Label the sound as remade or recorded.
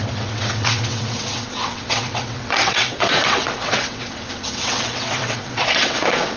remade